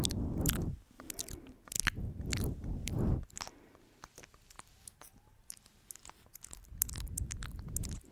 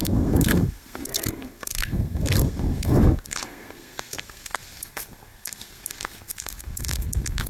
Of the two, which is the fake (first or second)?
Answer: second